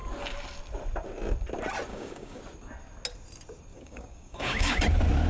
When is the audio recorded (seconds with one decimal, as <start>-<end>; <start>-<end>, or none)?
0.0-1.9; 2.4-3.7; 4.8-5.3

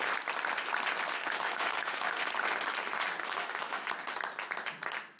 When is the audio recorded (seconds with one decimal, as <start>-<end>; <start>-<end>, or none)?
0.0-1.0; 2.3-3.2; 3.9-5.2

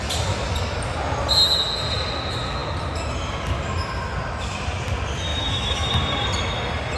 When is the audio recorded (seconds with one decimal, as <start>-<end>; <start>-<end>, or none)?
0.0-5.3; 5.9-7.0

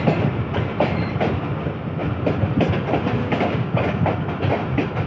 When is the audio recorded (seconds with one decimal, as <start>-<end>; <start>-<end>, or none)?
0.0-3.2; 3.9-5.1

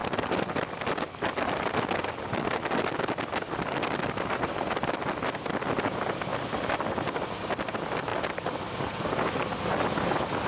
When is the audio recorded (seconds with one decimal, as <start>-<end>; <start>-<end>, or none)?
0.0-10.5